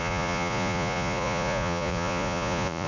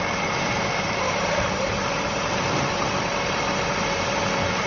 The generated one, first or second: first